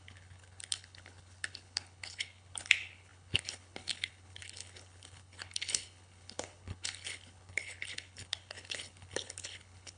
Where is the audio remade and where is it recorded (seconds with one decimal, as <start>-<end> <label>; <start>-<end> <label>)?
0.0-10.0 remade